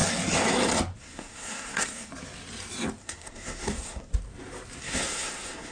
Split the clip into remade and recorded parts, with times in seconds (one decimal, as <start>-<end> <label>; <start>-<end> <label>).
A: 0.0-1.0 recorded; 1.0-2.1 remade; 2.1-3.0 recorded; 3.0-4.1 remade; 4.1-4.8 recorded; 4.8-5.7 remade